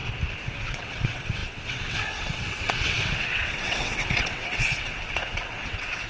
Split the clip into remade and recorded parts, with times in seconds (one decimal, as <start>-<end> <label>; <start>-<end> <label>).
0.0-0.6 recorded; 0.6-6.1 remade